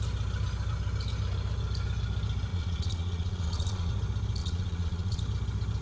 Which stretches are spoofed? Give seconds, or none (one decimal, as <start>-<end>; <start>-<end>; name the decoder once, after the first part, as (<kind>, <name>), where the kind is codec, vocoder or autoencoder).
2.5-3.9 (vocoder, Vocos); 4.4-5.2